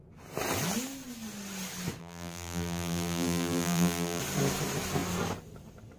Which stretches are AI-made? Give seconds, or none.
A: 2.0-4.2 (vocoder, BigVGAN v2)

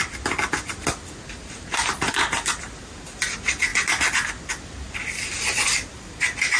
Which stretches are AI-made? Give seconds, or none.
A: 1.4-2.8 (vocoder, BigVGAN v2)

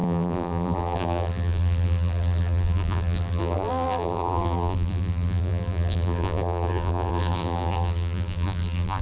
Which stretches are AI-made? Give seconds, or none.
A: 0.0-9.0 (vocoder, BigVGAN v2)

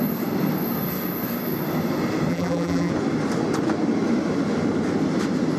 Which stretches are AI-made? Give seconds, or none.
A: 2.3-2.9 (vocoder, BigVGAN v2)

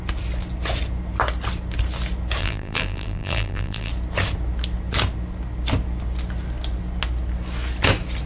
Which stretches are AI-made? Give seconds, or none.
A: 2.4-3.9 (vocoder, BigVGAN v2)

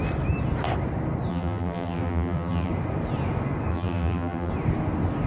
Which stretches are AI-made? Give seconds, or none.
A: 1.3-2.7 (vocoder, BigVGAN v2); 3.7-4.5

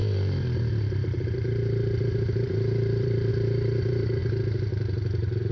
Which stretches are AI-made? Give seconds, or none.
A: 0.0-4.2 (vocoder, BigVGAN v2); 4.7-5.5

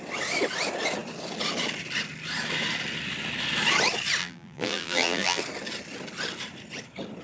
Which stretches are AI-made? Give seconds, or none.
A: 4.2-5.4 (vocoder, BigVGAN v2)